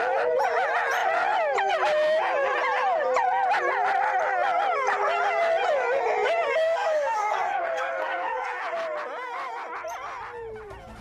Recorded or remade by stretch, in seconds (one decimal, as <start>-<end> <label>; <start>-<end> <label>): 0.0-6.6 recorded; 6.6-8.6 remade; 8.6-11.0 recorded